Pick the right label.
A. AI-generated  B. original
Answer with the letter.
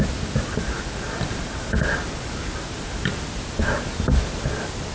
B